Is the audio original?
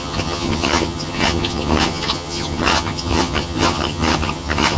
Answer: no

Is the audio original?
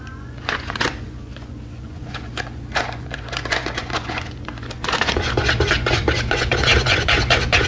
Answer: no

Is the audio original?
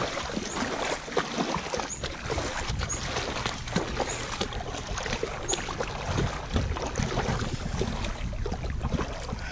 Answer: yes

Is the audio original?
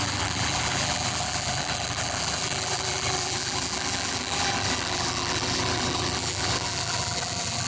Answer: no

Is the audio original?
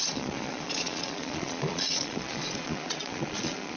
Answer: no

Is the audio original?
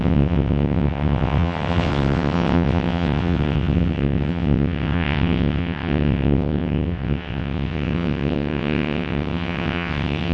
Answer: no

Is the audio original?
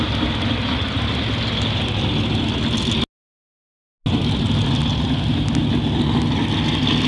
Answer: yes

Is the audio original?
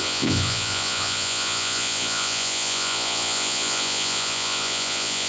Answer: no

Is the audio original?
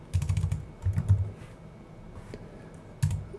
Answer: yes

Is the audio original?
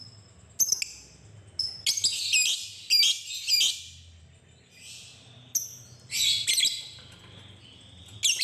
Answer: yes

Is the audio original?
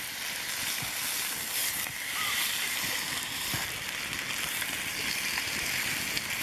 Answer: yes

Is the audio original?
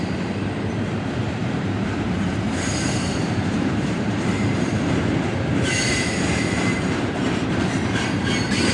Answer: no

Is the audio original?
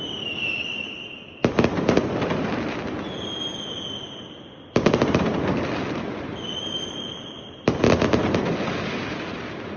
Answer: no